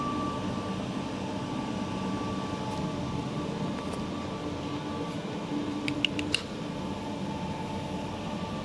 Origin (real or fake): real